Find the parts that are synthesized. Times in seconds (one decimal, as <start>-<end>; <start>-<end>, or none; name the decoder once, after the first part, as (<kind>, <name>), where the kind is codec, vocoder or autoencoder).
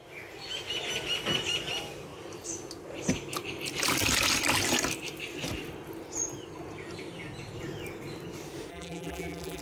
8.7-9.6 (vocoder, BigVGAN v2)